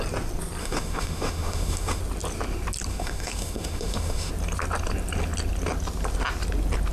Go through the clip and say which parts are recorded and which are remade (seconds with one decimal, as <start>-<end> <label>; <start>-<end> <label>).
0.0-0.6 recorded; 0.6-2.0 remade; 2.0-2.9 recorded; 2.9-4.3 remade; 4.3-6.9 recorded